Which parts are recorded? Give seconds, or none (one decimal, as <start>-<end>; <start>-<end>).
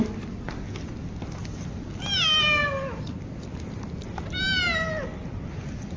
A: 0.0-6.0